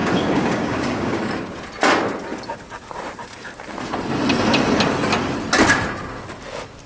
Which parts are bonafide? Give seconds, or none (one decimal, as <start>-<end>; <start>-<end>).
1.3-6.9